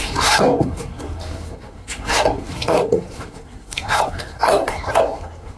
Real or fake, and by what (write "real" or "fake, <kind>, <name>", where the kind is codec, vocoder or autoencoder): fake, codec, SNAC